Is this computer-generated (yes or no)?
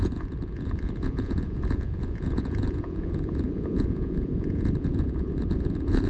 yes